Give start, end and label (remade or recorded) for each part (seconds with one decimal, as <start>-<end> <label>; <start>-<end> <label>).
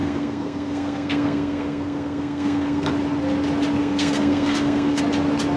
0.0-2.9 remade; 2.9-3.8 recorded; 3.8-5.0 remade; 5.0-5.6 recorded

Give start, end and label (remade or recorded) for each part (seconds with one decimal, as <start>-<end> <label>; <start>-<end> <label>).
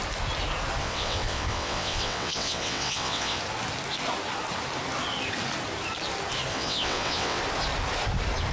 0.0-0.8 recorded; 0.8-3.4 remade; 3.4-6.5 recorded; 6.5-7.4 remade; 7.4-8.5 recorded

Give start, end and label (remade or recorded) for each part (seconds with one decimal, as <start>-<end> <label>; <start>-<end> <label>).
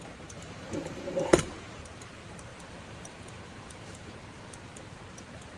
0.0-5.6 remade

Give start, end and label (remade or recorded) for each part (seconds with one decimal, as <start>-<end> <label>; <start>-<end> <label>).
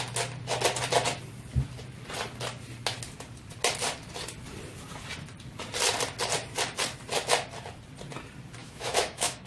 0.0-8.6 recorded; 8.6-9.5 remade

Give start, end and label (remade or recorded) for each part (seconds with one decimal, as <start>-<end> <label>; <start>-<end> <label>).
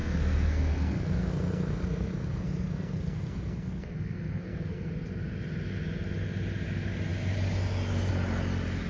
0.0-4.9 remade; 4.9-8.9 recorded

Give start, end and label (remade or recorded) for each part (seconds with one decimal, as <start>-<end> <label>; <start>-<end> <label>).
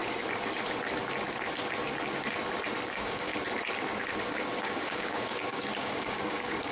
0.0-2.9 recorded; 2.9-3.3 remade; 3.3-4.6 recorded; 4.6-6.7 remade